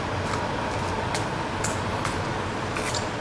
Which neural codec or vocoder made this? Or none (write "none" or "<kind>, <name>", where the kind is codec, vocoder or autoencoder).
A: none